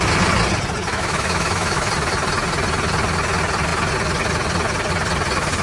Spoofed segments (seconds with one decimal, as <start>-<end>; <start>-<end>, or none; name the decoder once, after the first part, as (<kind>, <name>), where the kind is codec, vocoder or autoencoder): 0.9-1.9 (autoencoder, DAC-VAE)

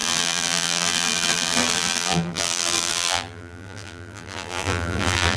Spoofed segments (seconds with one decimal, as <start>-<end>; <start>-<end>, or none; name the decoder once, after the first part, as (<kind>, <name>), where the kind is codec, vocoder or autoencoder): 0.0-5.4 (vocoder, BigVGAN v2)

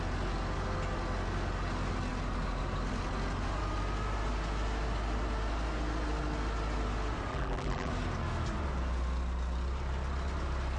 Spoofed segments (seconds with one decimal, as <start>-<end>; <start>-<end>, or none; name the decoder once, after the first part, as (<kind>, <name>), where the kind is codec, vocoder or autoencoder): 7.3-7.9 (vocoder, BigVGAN v2)

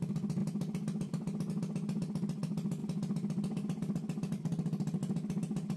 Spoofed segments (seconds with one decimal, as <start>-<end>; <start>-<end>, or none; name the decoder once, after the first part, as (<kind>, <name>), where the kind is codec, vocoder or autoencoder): none

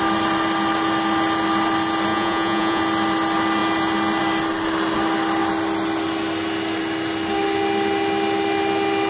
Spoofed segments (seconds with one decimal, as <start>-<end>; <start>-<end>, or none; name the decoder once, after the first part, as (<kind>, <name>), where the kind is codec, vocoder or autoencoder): 2.1-2.8 (vocoder, Vocos)

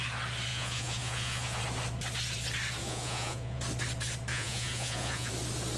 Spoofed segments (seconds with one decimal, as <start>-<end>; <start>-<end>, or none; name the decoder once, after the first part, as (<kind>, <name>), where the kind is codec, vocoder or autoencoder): 0.5-1.6 (vocoder, Vocos); 2.8-3.6; 4.3-5.3

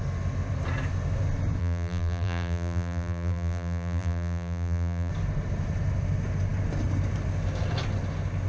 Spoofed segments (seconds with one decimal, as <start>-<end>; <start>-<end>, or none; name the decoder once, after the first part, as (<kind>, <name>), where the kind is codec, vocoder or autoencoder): 1.6-5.1 (vocoder, BigVGAN v2)